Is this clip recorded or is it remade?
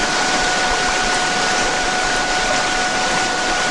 remade